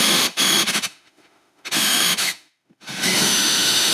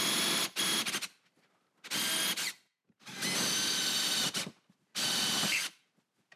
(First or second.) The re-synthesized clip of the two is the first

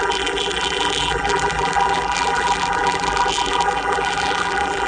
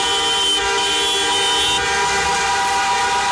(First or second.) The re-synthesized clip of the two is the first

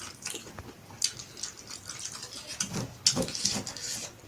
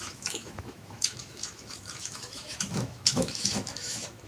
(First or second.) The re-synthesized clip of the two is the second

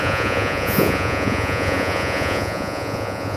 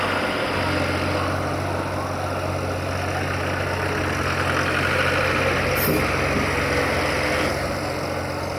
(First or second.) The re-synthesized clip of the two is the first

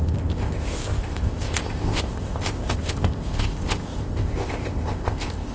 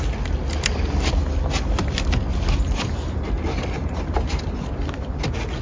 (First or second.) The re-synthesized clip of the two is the first